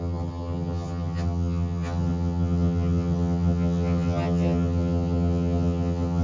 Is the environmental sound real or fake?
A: fake